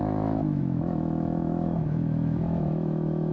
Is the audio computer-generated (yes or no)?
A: yes